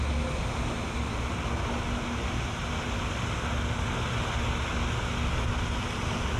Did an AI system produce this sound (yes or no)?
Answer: no